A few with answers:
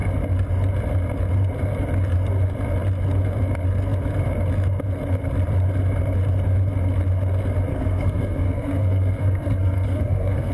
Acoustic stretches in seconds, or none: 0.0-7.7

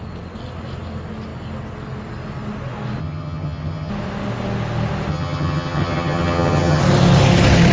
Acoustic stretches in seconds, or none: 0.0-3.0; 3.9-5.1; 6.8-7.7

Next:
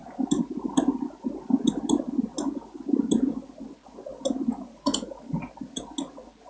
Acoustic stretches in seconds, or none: 0.0-6.5

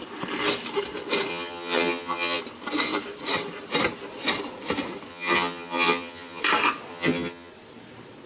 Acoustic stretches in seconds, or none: 0.0-1.3; 2.4-5.1; 6.4-6.9; 7.5-8.3

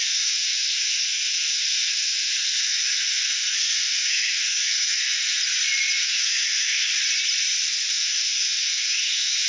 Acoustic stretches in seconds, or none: 5.4-6.0; 6.9-7.9